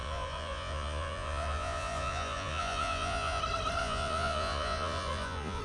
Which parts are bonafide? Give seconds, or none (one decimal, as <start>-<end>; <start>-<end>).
3.4-3.8